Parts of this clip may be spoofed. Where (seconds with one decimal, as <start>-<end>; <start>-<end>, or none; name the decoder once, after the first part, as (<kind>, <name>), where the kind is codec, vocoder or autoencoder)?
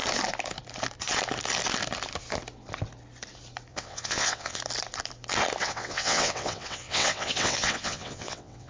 3.7-4.6 (vocoder, WaveNeXt); 5.6-8.7